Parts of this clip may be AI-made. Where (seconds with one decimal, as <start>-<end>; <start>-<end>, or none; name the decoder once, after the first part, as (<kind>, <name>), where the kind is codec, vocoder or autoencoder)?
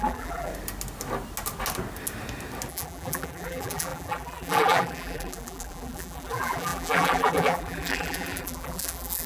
0.0-0.5 (vocoder, BigVGAN v2); 2.7-9.3